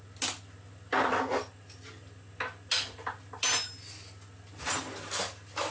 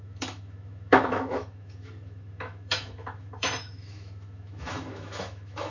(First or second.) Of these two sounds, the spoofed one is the second